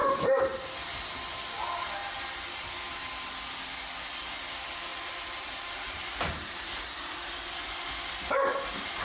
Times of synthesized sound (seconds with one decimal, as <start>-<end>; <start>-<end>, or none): 4.9-7.5